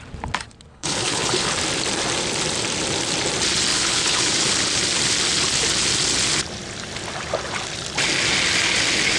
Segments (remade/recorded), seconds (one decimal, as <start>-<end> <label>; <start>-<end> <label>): 0.0-0.7 recorded; 0.7-1.5 remade; 1.5-3.7 recorded; 3.7-4.3 remade; 4.3-9.2 recorded